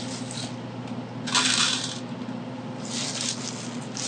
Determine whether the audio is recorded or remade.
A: recorded